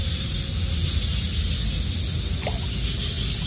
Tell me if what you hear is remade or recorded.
recorded